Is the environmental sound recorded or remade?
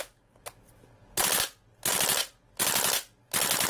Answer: recorded